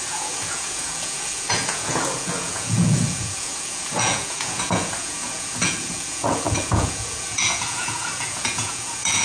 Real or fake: fake